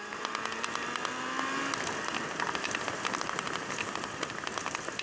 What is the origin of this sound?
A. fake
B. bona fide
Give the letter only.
B